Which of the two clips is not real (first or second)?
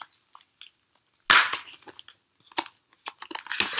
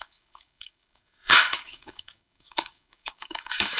second